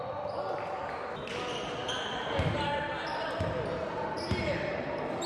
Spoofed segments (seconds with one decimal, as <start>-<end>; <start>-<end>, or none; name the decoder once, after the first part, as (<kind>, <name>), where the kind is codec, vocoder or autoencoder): 1.8-5.3 (vocoder, BigVGAN v2)